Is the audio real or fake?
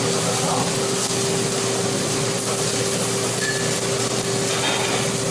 real